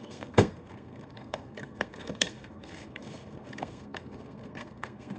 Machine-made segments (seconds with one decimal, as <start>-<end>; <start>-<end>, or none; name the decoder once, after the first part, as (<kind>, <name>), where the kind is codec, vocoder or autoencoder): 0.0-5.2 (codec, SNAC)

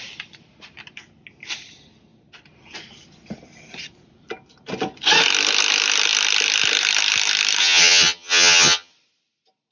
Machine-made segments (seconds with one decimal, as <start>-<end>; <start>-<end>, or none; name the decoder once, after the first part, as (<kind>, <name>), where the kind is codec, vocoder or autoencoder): 7.6-8.9 (vocoder, HiFi-GAN)

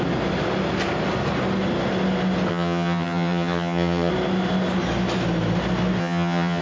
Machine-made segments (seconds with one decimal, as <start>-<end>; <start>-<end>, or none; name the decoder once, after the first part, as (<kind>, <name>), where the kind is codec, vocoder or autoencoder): 2.5-4.1 (vocoder, HiFi-GAN); 6.0-6.6